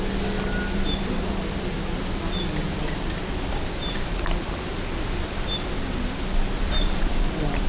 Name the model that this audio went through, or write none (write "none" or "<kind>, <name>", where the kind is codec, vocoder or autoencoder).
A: none